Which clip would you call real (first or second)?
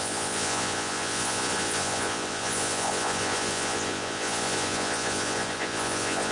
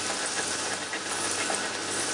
second